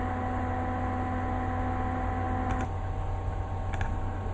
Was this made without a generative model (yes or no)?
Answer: yes